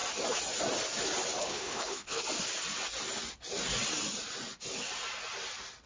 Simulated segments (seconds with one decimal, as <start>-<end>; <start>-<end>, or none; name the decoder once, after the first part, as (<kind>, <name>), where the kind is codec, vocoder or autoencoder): 1.4-2.2 (codec, HILCodec)